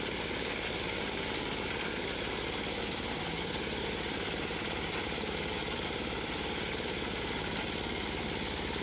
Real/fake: fake